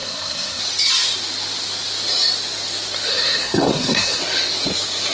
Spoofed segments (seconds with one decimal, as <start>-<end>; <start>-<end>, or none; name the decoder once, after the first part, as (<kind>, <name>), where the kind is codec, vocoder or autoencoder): 0.0-0.6 (codec, SNAC); 3.1-4.2